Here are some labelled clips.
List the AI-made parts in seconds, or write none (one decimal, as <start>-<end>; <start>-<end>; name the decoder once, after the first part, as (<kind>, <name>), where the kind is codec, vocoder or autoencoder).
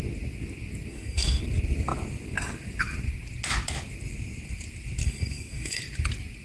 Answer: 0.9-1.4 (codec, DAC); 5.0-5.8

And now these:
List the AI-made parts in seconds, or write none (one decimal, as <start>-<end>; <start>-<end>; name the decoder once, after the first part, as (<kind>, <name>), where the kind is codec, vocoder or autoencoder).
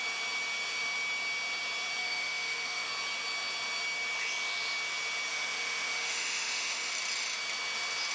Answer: 2.0-2.9 (autoencoder, DAC-VAE); 5.3-6.9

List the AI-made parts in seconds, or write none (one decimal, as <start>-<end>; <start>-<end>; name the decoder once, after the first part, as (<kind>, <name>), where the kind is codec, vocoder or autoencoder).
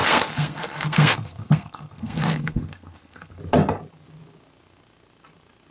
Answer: 0.0-3.4 (codec, SNAC)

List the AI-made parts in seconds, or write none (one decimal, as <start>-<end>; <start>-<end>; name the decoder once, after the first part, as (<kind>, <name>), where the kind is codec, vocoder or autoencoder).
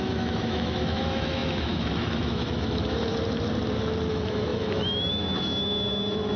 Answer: 0.0-3.1 (autoencoder, DAC-VAE); 4.1-6.4